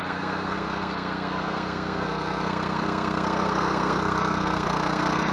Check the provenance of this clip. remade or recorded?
remade